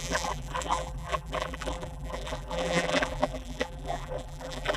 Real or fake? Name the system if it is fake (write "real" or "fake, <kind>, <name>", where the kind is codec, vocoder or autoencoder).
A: fake, vocoder, BigVGAN v2